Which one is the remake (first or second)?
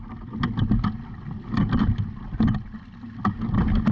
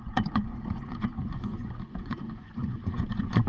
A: second